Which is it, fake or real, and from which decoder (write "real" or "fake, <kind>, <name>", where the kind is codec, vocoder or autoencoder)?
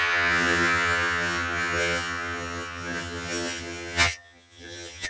fake, vocoder, HiFi-GAN